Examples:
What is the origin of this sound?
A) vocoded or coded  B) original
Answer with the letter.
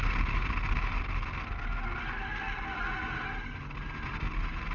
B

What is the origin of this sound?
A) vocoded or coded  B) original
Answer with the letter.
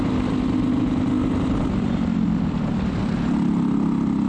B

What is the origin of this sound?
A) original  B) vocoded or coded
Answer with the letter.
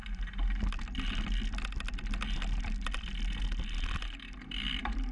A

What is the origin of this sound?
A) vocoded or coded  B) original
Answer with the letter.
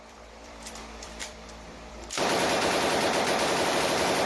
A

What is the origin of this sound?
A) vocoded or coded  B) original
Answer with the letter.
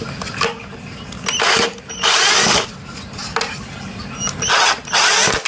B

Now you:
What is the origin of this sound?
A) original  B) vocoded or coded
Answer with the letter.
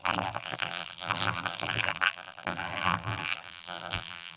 B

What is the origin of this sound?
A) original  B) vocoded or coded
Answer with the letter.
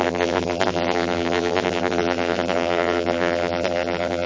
B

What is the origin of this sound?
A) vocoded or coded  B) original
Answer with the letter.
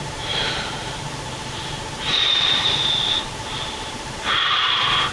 A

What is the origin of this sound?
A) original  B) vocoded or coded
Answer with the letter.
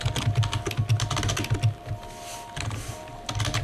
A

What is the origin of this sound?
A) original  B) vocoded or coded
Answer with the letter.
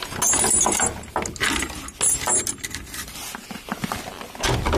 A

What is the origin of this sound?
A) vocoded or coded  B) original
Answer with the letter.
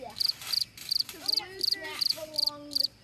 B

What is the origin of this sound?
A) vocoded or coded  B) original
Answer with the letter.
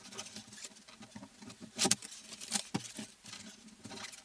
B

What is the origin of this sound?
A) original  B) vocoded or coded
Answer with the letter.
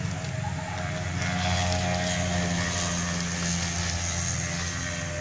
A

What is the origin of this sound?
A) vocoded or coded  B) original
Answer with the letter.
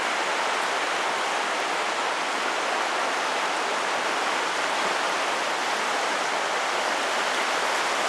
B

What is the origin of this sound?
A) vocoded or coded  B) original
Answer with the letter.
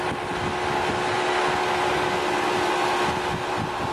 B